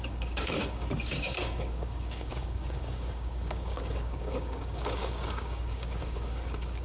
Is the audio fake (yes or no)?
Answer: yes